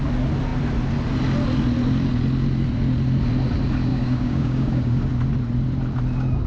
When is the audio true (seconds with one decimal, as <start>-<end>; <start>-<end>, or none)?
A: 0.0-3.9; 5.1-6.5